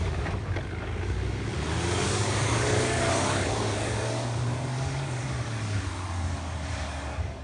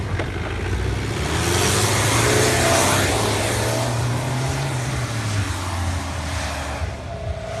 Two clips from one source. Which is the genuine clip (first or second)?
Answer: second